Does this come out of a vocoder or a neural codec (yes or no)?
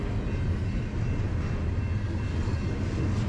no